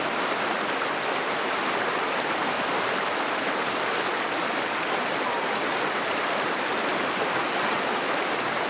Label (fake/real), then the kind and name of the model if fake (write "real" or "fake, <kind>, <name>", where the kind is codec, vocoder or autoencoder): real